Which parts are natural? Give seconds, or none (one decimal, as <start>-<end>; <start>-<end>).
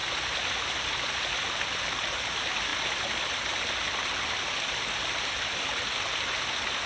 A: 0.0-6.9